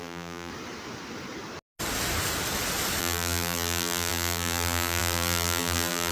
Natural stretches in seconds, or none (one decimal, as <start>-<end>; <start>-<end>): 0.5-3.0